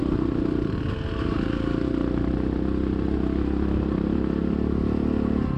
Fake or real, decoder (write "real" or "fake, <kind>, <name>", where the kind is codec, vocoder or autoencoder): real